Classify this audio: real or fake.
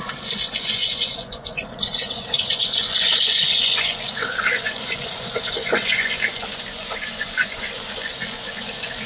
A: fake